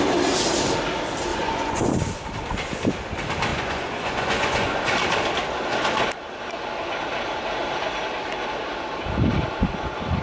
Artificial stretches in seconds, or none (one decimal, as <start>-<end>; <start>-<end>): 1.3-1.9; 3.5-4.8